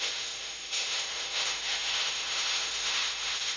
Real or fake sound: fake